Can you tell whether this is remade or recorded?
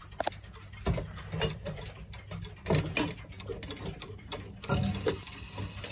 recorded